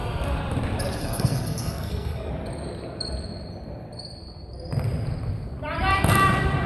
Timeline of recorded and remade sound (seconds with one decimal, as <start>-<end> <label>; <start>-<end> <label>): 0.0-1.0 recorded; 1.0-2.3 remade; 2.3-6.7 recorded